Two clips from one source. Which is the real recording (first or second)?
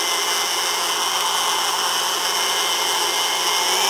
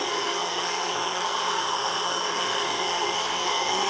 first